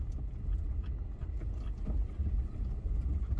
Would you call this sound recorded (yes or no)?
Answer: yes